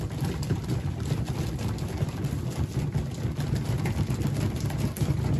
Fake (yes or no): no